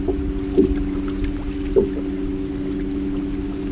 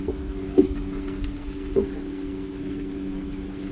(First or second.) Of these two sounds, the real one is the first